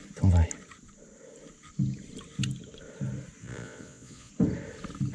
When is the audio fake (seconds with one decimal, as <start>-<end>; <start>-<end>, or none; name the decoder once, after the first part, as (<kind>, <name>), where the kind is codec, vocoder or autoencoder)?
3.4-4.3 (vocoder, Vocos)